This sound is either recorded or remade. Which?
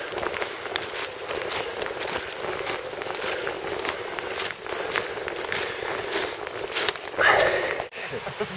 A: recorded